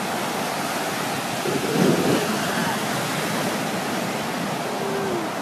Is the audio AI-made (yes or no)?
no